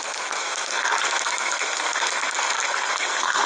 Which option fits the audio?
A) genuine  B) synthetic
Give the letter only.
B